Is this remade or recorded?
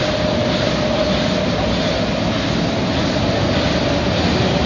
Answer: recorded